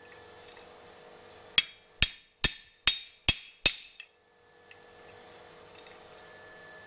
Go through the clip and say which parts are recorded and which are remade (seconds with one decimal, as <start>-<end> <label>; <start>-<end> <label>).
0.0-6.9 recorded